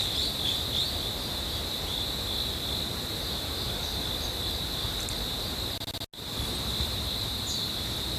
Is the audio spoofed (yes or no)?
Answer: no